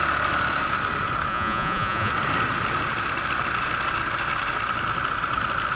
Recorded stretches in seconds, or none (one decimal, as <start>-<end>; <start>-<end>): 0.0-1.3; 2.1-5.8